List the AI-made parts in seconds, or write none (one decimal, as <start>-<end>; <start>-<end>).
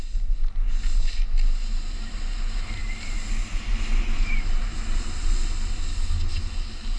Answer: none